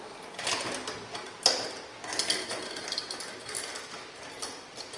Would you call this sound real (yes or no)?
yes